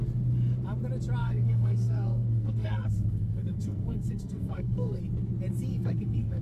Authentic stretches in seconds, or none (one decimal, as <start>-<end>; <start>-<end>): 0.0-1.2; 5.0-5.7